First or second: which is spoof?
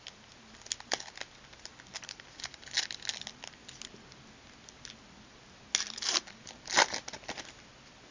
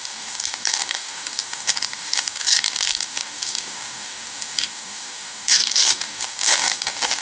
second